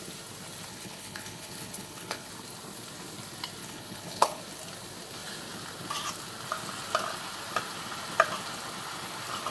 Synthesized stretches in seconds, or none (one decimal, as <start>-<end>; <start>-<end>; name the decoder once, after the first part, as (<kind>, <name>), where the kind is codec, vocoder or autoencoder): 0.7-2.3 (codec, HILCodec); 3.6-4.4